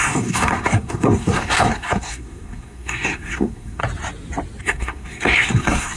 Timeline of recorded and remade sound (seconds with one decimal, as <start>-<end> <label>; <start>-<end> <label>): 0.0-3.8 remade; 3.8-4.6 recorded; 4.6-6.0 remade